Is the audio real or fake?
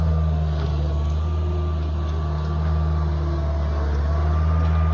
real